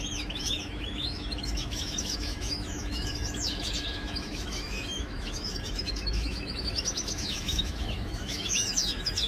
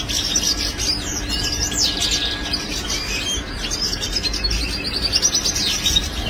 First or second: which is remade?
first